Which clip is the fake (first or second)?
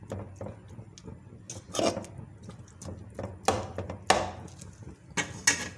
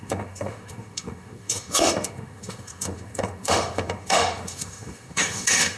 second